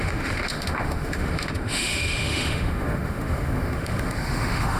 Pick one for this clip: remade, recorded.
remade